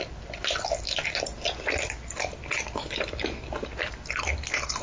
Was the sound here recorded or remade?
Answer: recorded